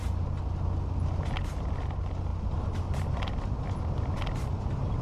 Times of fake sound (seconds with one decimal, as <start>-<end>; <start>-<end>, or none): none